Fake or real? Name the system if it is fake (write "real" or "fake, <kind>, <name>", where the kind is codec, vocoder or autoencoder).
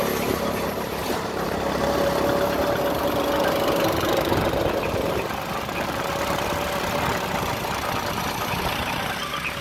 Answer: real